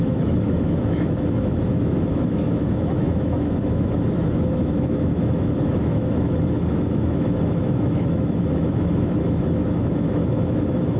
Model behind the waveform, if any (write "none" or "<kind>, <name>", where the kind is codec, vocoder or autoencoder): autoencoder, DAC-VAE